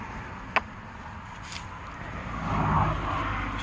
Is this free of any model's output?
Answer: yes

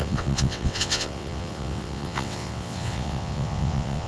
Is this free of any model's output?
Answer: no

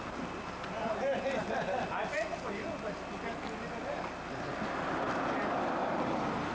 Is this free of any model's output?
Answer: yes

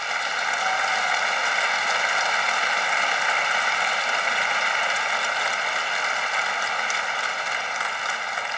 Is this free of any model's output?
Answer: yes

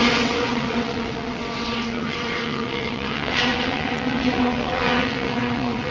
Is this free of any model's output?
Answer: no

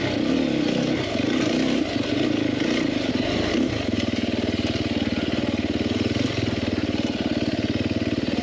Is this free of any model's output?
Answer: yes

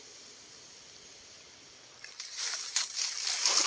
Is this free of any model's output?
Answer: yes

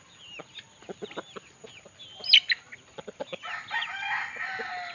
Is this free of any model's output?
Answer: yes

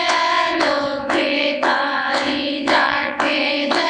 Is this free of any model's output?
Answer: no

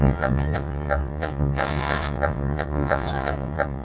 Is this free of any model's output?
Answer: no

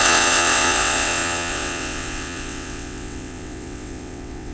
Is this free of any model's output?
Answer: no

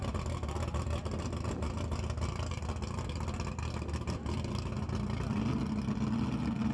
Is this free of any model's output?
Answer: yes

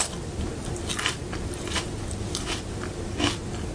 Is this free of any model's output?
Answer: yes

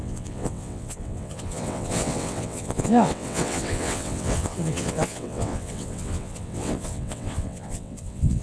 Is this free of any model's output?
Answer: no